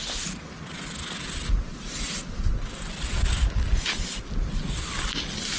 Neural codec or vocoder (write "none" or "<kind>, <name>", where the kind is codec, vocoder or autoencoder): none